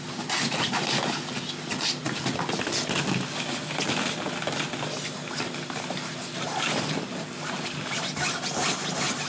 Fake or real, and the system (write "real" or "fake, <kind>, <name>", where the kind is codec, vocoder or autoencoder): real